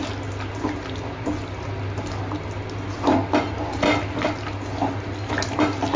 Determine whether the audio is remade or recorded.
recorded